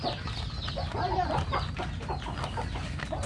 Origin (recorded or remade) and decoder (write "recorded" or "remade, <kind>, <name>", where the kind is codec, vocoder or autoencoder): recorded